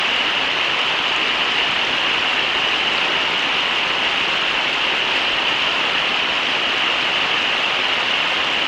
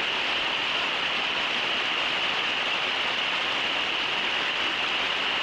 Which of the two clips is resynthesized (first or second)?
second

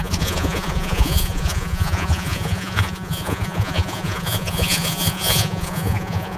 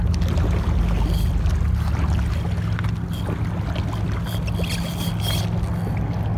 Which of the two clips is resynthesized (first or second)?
first